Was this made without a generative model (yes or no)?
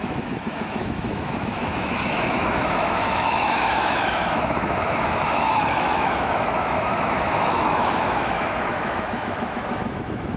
no